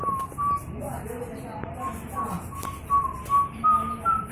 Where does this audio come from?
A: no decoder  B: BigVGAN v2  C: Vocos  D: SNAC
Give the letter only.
A